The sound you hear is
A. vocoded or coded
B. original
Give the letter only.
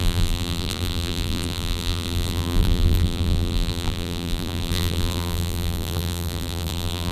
A